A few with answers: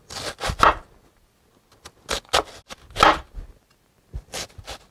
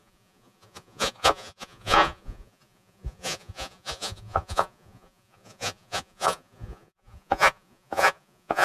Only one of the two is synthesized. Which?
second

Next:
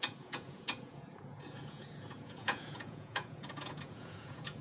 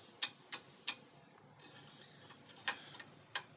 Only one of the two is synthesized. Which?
first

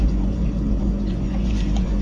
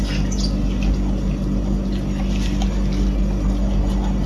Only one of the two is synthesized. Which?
first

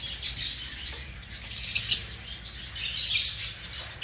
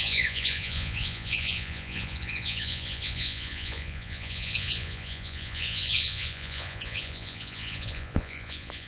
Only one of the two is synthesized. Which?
second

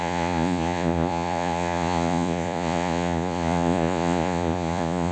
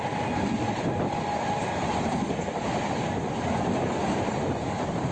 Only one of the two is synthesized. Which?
first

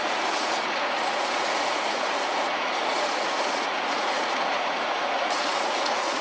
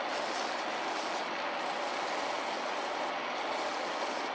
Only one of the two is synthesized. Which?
first